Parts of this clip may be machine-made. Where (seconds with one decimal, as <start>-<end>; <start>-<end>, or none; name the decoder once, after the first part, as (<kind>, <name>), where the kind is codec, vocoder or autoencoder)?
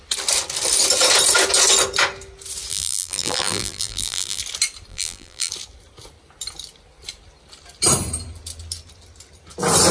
2.7-4.4 (vocoder, BigVGAN v2); 4.9-5.5